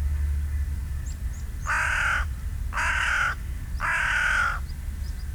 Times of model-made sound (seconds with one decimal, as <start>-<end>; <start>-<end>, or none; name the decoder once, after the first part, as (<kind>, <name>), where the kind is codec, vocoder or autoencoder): none

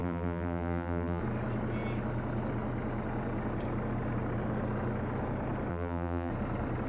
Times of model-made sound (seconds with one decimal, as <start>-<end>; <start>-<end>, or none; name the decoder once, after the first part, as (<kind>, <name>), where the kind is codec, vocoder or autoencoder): 0.0-1.2 (vocoder, BigVGAN v2); 5.7-6.3

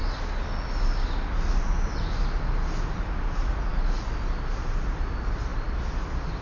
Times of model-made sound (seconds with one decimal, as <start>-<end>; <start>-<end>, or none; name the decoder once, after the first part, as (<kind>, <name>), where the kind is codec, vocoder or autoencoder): none

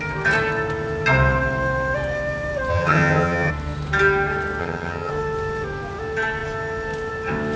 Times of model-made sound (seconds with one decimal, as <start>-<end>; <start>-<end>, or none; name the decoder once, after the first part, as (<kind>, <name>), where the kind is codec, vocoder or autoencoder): 2.7-3.5 (vocoder, HiFi-GAN); 4.6-5.1

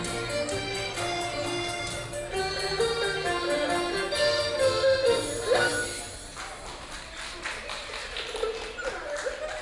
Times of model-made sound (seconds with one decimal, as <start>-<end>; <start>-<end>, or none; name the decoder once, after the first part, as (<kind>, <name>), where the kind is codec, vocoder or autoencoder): none

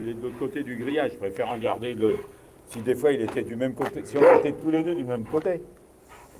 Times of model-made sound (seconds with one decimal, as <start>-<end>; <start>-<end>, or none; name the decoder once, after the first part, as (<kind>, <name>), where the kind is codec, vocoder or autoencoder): 1.5-2.4 (codec, SNAC); 4.6-5.4